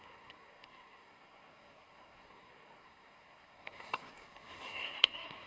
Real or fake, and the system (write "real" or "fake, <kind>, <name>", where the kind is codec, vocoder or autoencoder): fake, codec, SNAC